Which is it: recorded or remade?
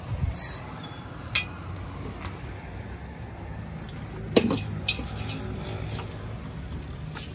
recorded